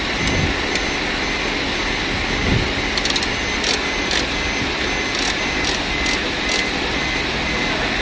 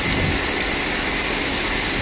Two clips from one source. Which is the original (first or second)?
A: first